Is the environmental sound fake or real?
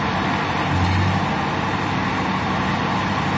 real